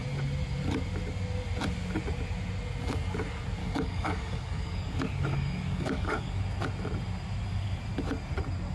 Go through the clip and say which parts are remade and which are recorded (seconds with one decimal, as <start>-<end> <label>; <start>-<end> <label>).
0.0-3.6 recorded; 3.6-6.4 remade; 6.4-8.7 recorded